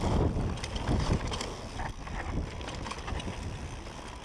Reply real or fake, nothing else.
real